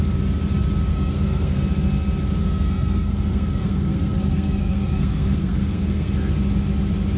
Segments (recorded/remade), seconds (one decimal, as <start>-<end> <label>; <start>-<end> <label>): 0.0-0.9 recorded; 0.9-1.6 remade; 1.6-2.4 recorded; 2.4-6.1 remade; 6.1-7.2 recorded